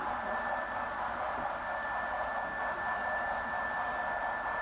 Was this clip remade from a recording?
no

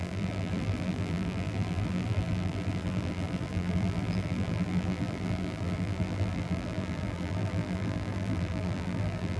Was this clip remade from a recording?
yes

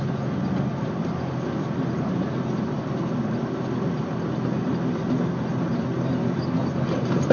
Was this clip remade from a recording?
no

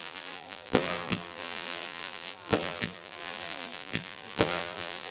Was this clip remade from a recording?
yes